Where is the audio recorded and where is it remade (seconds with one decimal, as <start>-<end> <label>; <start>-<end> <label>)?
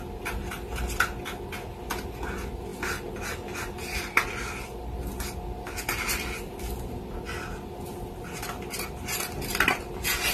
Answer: 0.0-6.1 recorded; 6.1-6.7 remade; 6.7-10.3 recorded